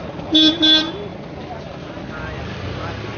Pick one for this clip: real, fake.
real